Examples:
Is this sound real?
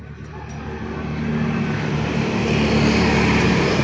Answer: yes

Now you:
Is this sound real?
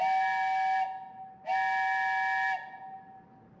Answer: yes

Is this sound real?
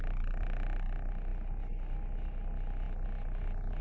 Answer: yes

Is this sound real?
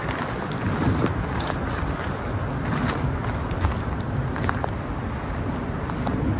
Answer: yes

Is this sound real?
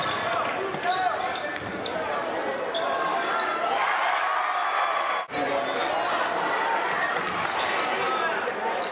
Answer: yes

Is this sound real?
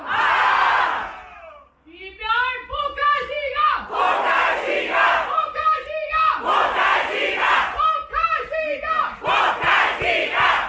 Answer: yes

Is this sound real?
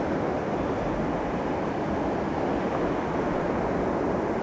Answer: yes